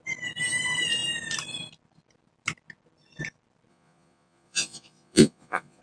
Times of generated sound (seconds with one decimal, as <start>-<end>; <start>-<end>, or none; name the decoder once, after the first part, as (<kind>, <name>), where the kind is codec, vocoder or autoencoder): 3.7-5.8 (vocoder, Vocos)